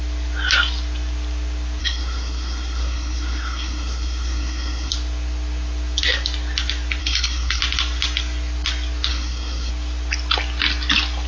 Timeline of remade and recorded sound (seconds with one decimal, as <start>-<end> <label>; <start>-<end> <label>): 0.0-1.8 recorded; 1.8-4.9 remade; 4.9-7.0 recorded; 7.0-7.6 remade; 7.6-9.1 recorded; 9.1-9.7 remade; 9.7-11.3 recorded